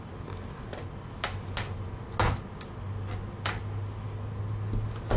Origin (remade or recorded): recorded